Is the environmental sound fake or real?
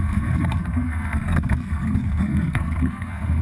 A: fake